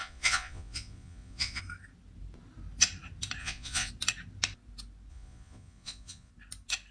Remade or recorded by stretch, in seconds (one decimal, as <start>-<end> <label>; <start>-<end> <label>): 0.0-1.6 remade; 1.6-3.4 recorded; 3.4-3.9 remade; 3.9-5.1 recorded; 5.1-6.3 remade; 6.3-6.9 recorded

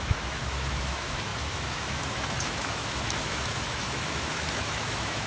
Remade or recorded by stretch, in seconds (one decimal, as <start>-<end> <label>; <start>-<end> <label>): 0.0-5.3 remade